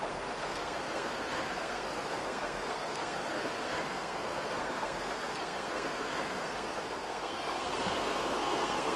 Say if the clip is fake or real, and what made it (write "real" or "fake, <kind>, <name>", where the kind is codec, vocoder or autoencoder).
fake, codec, SNAC